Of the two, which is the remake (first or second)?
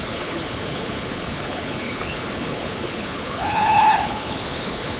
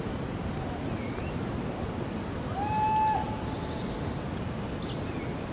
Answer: first